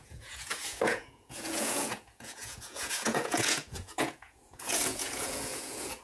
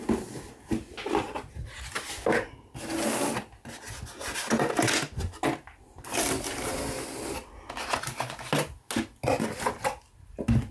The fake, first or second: first